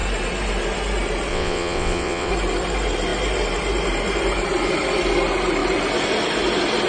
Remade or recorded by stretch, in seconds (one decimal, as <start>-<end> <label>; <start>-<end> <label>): 0.0-1.3 recorded; 1.3-2.3 remade; 2.3-6.9 recorded